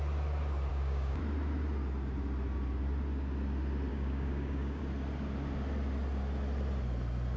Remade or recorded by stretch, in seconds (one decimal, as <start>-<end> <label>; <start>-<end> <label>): 0.0-0.7 recorded; 0.7-1.2 remade; 1.2-3.9 recorded; 3.9-4.8 remade; 4.8-7.4 recorded